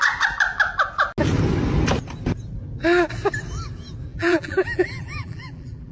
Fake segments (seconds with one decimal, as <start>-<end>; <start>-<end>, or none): 4.1-5.9